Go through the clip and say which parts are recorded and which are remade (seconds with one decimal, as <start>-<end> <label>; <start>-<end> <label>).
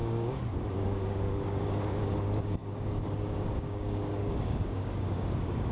0.0-5.7 remade